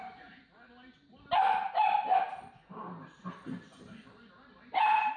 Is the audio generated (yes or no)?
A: no